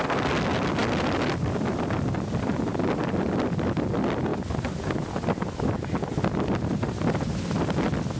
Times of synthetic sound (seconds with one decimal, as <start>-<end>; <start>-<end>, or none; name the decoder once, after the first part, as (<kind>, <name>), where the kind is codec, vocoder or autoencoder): none